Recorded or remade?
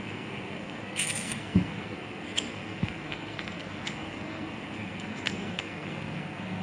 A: remade